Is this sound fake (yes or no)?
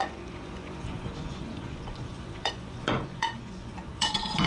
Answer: yes